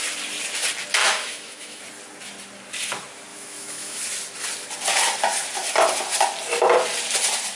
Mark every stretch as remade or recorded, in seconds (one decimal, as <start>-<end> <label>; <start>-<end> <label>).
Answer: 0.0-1.0 recorded; 1.0-1.8 remade; 1.8-3.3 recorded; 3.3-4.0 remade; 4.0-7.6 recorded